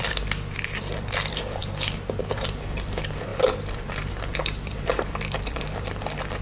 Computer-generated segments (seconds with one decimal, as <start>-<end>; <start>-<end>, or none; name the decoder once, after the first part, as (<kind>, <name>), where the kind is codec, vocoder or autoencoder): 0.0-1.6 (vocoder, BigVGAN v2); 2.2-6.4